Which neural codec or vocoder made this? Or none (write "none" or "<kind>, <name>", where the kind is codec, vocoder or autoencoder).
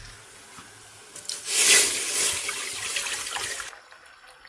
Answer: none